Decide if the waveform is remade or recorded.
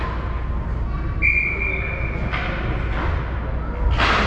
recorded